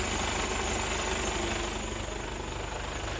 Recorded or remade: recorded